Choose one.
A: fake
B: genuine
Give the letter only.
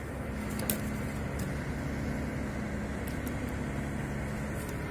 B